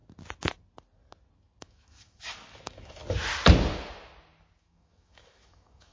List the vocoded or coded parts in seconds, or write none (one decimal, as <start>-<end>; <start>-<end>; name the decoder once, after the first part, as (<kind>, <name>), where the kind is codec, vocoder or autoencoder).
1.6-3.0 (autoencoder, DAC-VAE); 4.6-5.9